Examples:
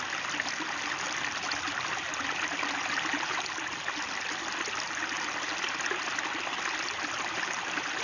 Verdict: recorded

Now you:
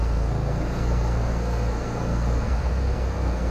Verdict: remade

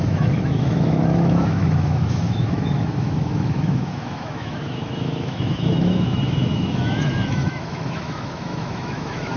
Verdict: remade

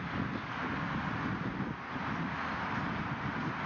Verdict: recorded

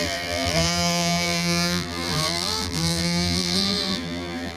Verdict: remade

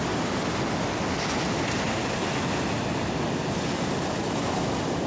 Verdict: recorded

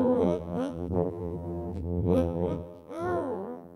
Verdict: remade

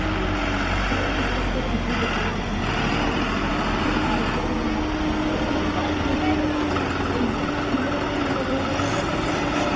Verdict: recorded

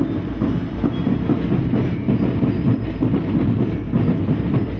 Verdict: recorded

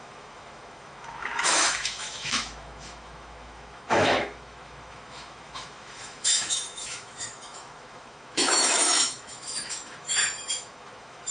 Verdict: remade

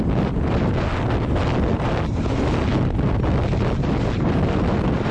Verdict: recorded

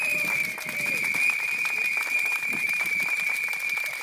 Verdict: recorded